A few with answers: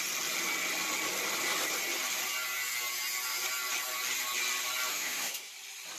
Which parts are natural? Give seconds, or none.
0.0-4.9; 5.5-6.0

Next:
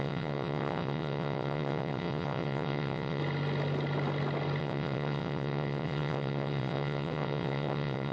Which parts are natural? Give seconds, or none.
3.2-4.6

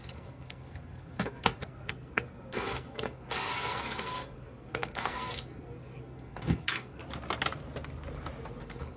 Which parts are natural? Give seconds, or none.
7.0-8.6

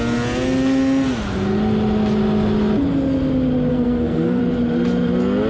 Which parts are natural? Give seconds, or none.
0.0-3.7; 4.4-5.5